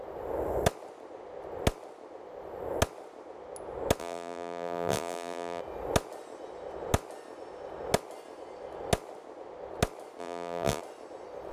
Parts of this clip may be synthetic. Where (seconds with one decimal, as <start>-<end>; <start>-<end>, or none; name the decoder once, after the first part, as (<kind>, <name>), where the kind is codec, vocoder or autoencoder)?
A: 4.0-5.6 (vocoder, BigVGAN v2); 10.2-10.8